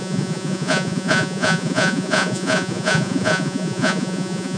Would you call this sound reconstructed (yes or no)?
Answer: yes